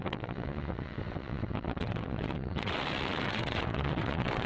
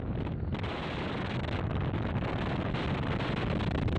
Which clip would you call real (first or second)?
second